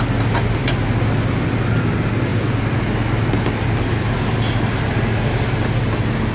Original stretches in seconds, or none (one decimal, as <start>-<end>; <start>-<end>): 0.0-6.3